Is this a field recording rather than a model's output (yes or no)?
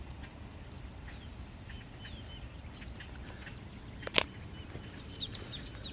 yes